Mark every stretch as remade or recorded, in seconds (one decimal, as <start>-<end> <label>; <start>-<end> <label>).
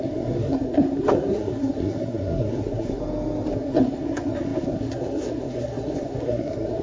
0.0-3.0 remade; 3.0-3.5 recorded; 3.5-6.8 remade